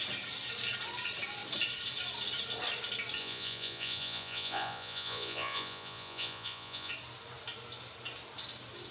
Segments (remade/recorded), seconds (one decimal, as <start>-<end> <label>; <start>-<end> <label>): 0.0-3.2 recorded; 3.2-6.9 remade; 6.9-8.9 recorded